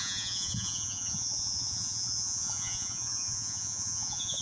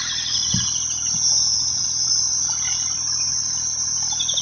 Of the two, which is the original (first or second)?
second